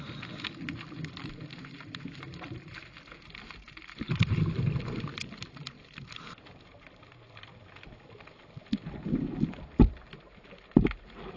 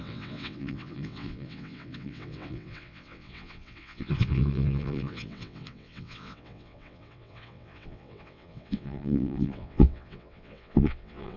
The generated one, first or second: second